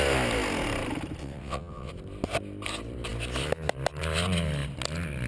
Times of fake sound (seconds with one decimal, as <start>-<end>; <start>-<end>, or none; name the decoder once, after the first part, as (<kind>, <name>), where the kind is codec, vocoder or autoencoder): 1.2-1.9 (vocoder, WaveNeXt)